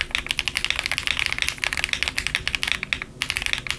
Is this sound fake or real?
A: real